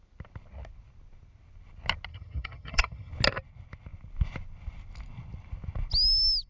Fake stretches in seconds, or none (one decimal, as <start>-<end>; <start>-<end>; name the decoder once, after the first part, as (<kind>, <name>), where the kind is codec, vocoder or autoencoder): 2.1-3.1 (vocoder, HiFi-GAN)